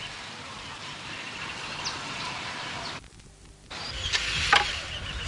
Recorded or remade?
recorded